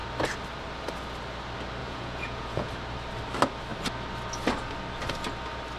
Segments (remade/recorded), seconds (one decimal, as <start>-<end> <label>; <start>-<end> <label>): 0.0-1.8 recorded; 1.8-2.7 remade; 2.7-5.8 recorded